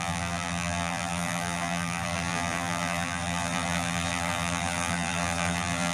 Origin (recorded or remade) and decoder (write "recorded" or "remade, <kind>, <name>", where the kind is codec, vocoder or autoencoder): remade, vocoder, BigVGAN v2